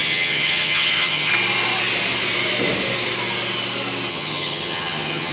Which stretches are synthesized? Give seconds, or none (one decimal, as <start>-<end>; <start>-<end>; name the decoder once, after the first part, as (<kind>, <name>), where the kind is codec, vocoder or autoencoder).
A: 0.0-1.3 (vocoder, HiFi-GAN); 4.1-5.3